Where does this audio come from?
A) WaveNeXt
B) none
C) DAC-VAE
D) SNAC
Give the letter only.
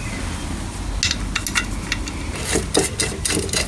B